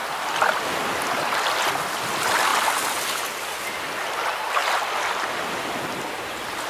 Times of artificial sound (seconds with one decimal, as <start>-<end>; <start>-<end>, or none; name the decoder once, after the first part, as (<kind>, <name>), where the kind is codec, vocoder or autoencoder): 4.6-5.5 (vocoder, BigVGAN v2)